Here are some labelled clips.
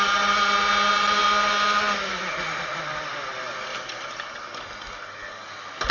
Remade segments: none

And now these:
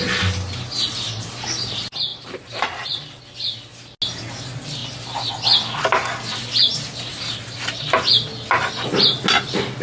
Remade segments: 2.1-3.2 (vocoder, BigVGAN v2); 7.1-7.9

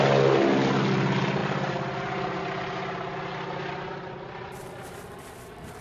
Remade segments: none

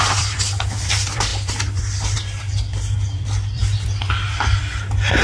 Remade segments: 0.0-3.6 (vocoder, BigVGAN v2); 4.6-5.2

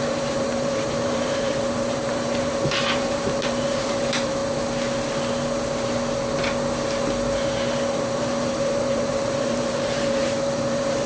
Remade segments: 0.0-4.4 (vocoder, BigVGAN v2); 8.0-11.1

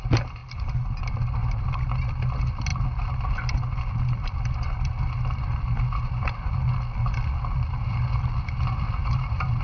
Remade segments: 1.4-1.9 (vocoder, BigVGAN v2); 9.0-9.6